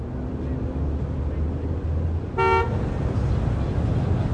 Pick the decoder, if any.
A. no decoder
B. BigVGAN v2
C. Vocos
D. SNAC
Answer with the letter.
A